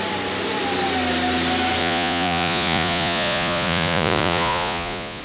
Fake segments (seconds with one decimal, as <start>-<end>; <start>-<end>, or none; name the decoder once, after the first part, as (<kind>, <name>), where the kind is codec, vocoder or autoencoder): 1.8-5.2 (vocoder, Vocos)